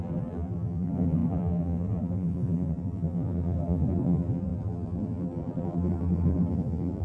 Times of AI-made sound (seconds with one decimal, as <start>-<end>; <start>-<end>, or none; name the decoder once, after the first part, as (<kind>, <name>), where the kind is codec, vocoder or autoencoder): 0.0-7.0 (vocoder, BigVGAN v2)